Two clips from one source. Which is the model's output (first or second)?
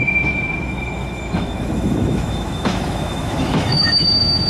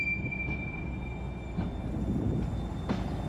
first